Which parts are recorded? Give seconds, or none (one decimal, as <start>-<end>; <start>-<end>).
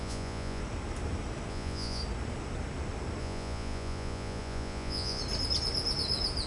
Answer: 0.6-1.5; 2.0-3.2; 5.2-6.5